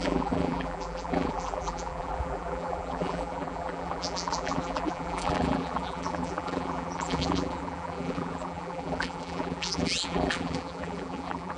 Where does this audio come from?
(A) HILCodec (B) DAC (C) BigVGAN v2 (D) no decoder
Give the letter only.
C